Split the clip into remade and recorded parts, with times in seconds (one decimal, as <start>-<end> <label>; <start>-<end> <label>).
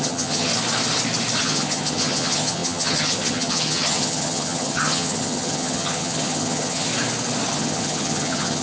0.0-0.5 remade; 0.5-1.4 recorded; 1.4-6.9 remade; 6.9-7.5 recorded; 7.5-8.6 remade